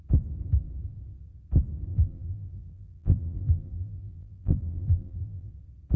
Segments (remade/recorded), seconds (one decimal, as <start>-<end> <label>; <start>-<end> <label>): 0.0-1.9 recorded; 1.9-5.5 remade; 5.5-6.0 recorded